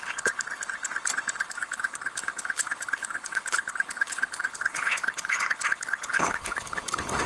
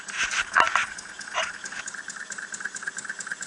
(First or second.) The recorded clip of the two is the second